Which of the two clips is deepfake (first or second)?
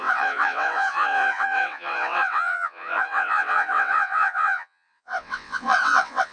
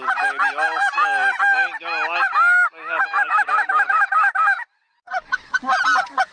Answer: first